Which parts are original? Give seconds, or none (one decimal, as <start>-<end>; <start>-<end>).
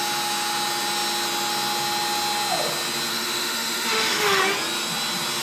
0.0-3.1; 4.4-5.4